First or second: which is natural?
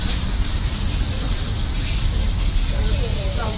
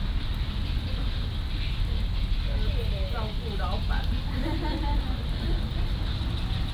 second